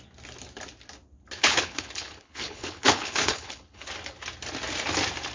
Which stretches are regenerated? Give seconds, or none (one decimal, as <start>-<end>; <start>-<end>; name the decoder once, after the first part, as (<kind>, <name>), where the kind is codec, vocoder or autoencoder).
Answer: 1.4-3.9 (codec, HILCodec)